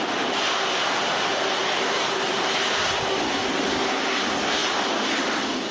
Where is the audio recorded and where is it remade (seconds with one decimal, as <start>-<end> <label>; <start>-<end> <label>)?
0.0-5.7 recorded